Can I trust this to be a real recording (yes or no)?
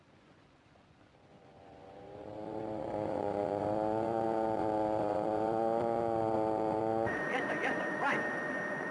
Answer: no